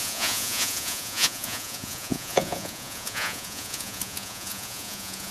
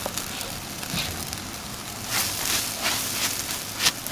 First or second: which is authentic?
second